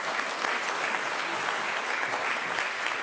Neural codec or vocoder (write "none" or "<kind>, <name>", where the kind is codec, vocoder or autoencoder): none